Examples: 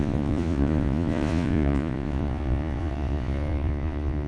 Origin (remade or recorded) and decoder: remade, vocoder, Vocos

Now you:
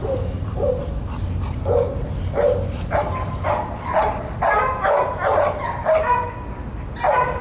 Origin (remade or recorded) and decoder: recorded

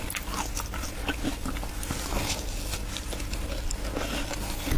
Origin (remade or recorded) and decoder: recorded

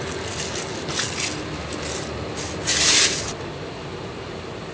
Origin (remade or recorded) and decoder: recorded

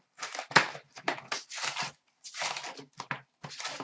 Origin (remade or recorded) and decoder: recorded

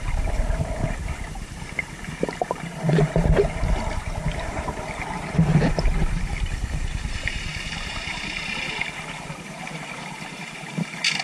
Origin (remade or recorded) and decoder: remade, vocoder, BigVGAN v2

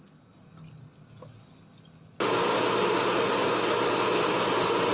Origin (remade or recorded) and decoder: recorded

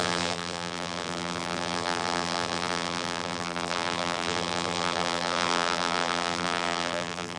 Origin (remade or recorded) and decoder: remade, vocoder, BigVGAN v2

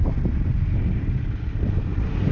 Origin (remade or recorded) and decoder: recorded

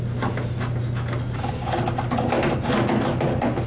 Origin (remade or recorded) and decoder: recorded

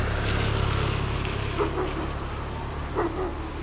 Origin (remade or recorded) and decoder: recorded